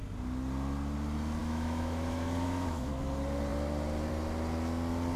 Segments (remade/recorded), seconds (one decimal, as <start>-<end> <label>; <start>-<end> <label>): 0.0-1.4 recorded; 1.4-3.0 remade; 3.0-5.2 recorded